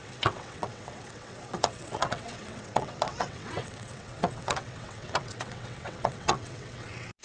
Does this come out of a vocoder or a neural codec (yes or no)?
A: yes